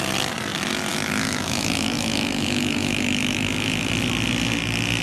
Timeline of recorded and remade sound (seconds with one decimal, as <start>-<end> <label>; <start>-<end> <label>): 0.0-0.9 recorded; 0.9-3.9 remade; 3.9-5.0 recorded